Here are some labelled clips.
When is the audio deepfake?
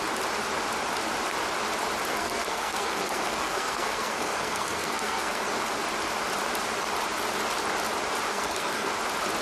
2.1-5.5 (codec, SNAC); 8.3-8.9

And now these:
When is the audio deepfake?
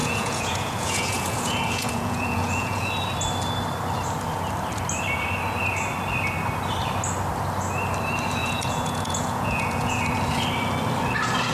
0.0-2.9 (vocoder, Vocos); 8.4-10.0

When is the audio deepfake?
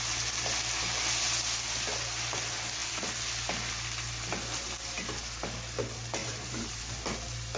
6.2-6.8 (vocoder, BigVGAN v2)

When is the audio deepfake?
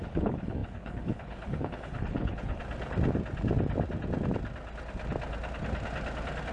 0.0-2.6 (codec, HILCodec)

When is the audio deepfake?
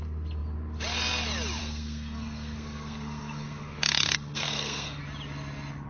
1.6-5.0 (codec, SNAC)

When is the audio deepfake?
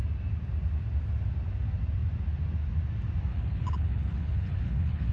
3.3-5.1 (codec, HILCodec)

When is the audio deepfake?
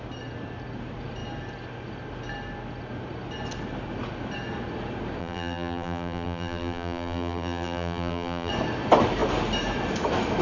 5.2-8.5 (vocoder, BigVGAN v2)